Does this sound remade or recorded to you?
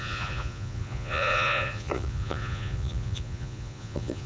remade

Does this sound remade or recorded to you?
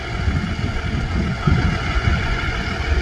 remade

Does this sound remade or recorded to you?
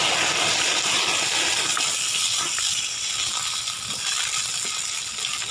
recorded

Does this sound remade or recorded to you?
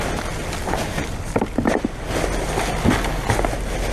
recorded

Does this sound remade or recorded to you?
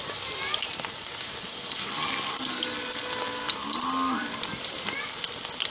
recorded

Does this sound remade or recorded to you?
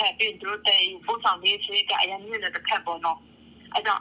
recorded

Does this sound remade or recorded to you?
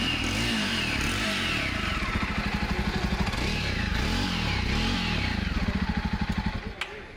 recorded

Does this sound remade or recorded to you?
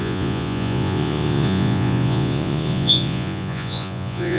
remade